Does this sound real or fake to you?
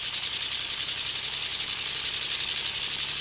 real